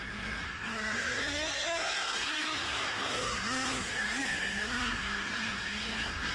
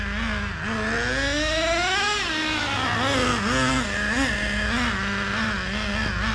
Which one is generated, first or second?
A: first